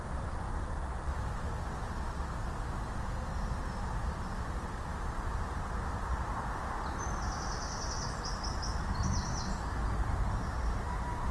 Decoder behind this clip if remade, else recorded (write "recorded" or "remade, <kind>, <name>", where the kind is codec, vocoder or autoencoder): recorded